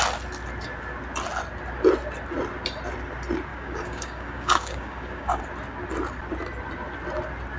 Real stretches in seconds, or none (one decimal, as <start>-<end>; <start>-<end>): 0.0-3.5; 5.4-7.6